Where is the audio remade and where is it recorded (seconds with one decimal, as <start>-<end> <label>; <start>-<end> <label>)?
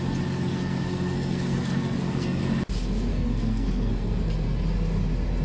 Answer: 0.0-0.5 recorded; 0.5-2.4 remade; 2.4-3.1 recorded; 3.1-4.2 remade; 4.2-5.4 recorded